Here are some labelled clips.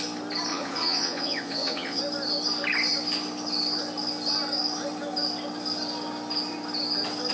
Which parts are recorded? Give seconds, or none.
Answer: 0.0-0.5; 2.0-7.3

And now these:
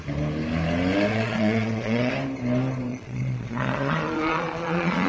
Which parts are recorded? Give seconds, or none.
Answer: 0.0-1.1; 2.1-2.9